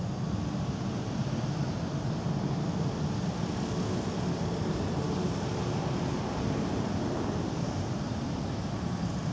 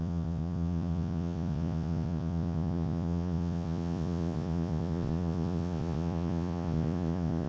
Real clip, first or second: first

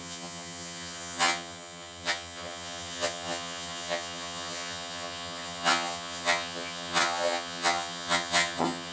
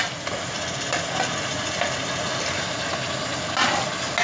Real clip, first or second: second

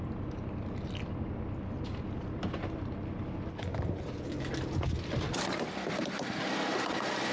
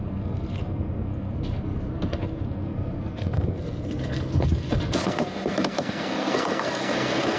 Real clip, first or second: first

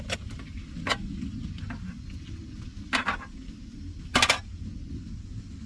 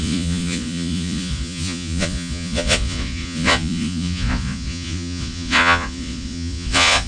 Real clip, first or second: first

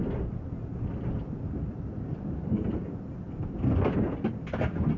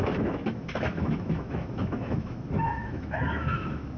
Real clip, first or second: first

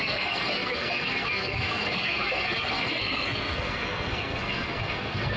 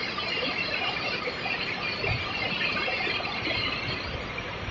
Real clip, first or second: second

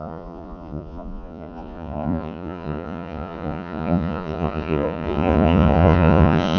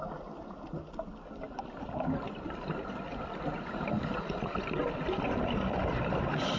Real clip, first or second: second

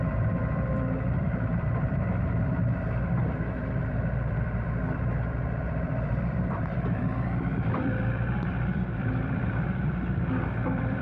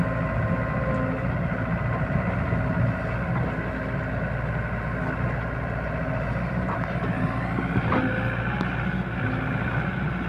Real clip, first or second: second